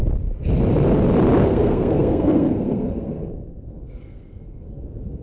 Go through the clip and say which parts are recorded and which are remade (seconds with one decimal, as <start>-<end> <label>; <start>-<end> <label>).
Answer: 0.0-1.4 recorded; 1.4-5.2 remade

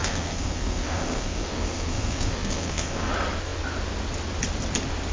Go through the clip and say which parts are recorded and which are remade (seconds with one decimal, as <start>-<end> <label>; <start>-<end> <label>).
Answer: 0.0-3.1 remade; 3.1-5.1 recorded

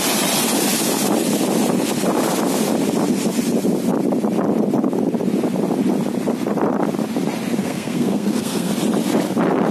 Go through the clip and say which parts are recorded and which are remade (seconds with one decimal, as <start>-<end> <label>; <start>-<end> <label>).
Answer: 0.0-7.6 recorded; 7.6-8.7 remade; 8.7-9.7 recorded

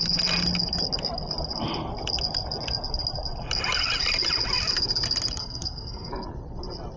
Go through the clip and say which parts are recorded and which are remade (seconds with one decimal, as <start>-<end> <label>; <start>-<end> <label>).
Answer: 0.0-5.4 recorded; 5.4-6.1 remade; 6.1-7.0 recorded

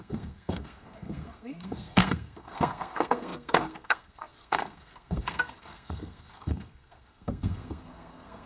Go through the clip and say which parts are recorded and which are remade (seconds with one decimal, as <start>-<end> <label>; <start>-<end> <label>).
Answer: 0.0-8.5 remade

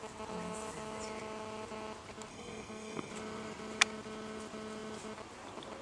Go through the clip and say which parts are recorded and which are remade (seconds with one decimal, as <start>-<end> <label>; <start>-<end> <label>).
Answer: 0.0-2.3 recorded; 2.3-3.1 remade; 3.1-5.8 recorded